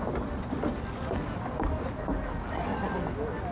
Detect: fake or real real